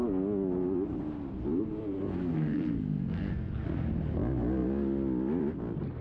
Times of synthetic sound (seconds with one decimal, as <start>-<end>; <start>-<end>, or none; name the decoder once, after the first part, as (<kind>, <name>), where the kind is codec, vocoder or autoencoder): 2.3-3.5 (codec, SNAC)